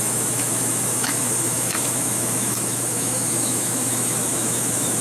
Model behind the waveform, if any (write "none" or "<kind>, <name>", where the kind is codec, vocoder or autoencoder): autoencoder, DAC-VAE